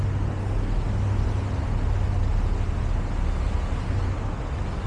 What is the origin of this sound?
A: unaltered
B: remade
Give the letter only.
A